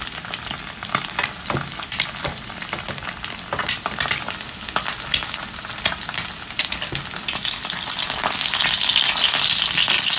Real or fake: real